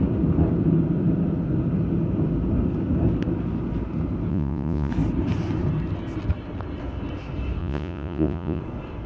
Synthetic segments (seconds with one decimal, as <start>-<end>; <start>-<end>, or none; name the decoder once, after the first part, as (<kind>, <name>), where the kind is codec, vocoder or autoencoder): 4.3-4.9 (vocoder, Vocos); 7.6-8.6